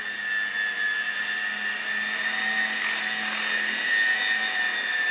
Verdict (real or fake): real